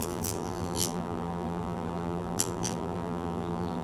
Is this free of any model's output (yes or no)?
no